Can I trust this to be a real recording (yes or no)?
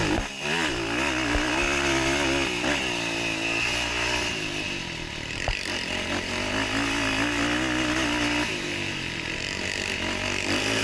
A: yes